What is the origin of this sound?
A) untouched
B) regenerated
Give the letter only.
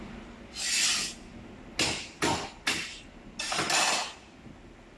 A